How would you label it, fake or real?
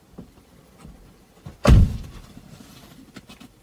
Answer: fake